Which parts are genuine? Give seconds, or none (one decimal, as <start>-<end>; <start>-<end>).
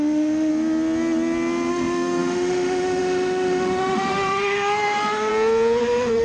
0.5-1.7; 5.3-5.8